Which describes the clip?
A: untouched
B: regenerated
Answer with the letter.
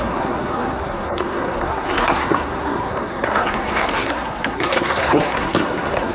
B